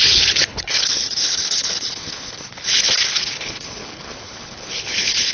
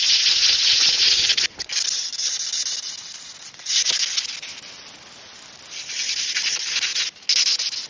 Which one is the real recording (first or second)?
second